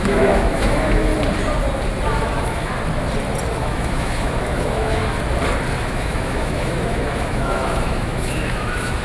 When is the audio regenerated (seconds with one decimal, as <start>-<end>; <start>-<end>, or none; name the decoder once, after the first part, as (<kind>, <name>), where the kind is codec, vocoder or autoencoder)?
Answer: 0.0-1.1 (autoencoder, DAC-VAE); 2.2-2.7; 3.5-5.0; 5.8-9.0